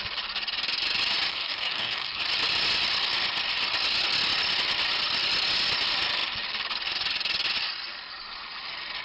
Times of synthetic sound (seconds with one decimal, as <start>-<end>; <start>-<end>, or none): 1.3-2.2